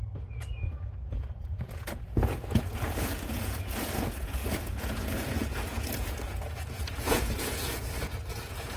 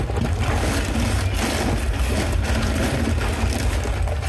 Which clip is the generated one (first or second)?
first